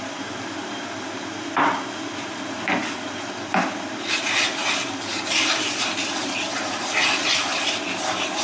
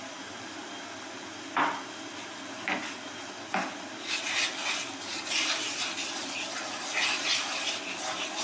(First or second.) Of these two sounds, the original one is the second